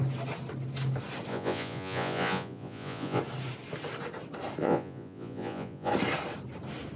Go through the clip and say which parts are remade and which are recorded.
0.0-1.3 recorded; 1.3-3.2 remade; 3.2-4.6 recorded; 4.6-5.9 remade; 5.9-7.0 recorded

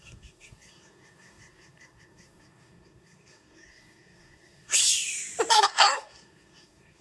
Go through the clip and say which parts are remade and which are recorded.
0.0-4.8 remade; 4.8-5.5 recorded; 5.5-7.0 remade

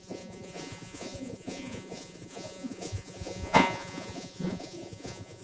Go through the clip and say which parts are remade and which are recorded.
0.0-5.4 remade